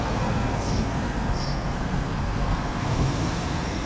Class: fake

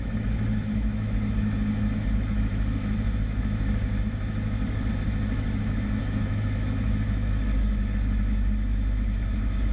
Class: fake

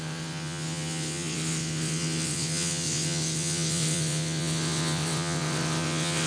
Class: fake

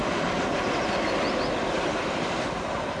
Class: real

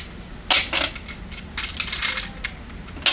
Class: real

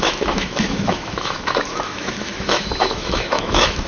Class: fake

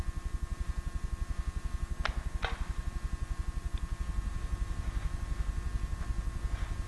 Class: real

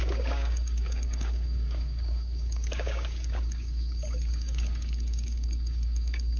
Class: fake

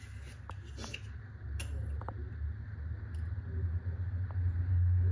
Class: real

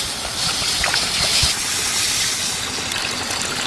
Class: real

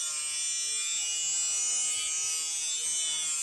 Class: real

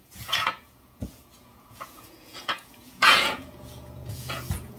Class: fake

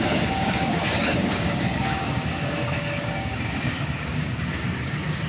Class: fake